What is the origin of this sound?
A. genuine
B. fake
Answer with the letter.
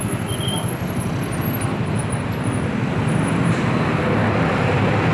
A